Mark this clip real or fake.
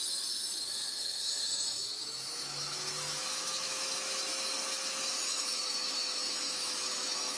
fake